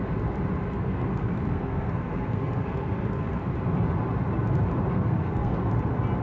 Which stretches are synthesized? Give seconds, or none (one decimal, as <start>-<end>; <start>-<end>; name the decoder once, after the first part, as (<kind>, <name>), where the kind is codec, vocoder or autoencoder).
0.7-3.4 (codec, SNAC); 4.9-5.7